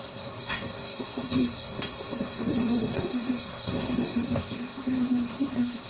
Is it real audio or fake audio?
fake